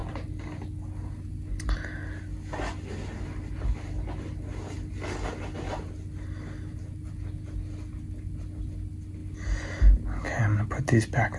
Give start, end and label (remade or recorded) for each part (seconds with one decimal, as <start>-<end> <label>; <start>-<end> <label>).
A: 0.0-11.4 recorded